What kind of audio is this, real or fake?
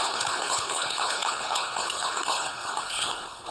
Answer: fake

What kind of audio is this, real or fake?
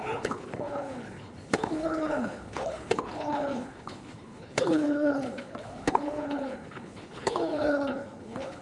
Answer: fake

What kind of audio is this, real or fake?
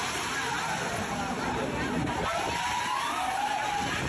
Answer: real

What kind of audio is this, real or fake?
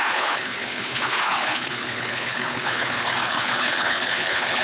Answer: fake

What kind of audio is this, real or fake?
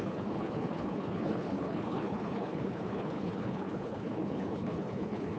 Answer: fake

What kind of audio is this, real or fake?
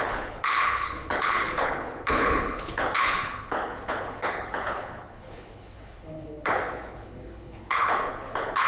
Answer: fake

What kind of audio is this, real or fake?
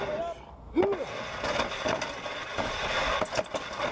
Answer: real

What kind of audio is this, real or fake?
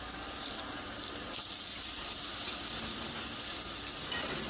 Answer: real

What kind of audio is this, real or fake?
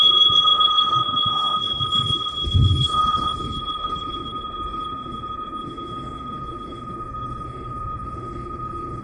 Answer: fake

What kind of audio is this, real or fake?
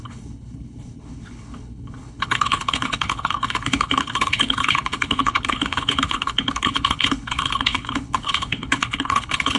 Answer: fake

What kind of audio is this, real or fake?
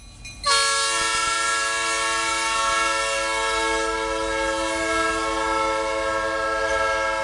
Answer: real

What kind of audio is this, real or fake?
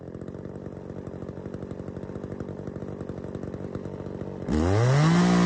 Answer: real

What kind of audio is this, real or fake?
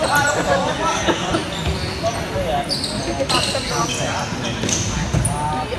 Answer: real